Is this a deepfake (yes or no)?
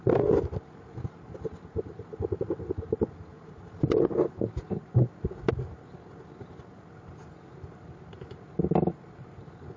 no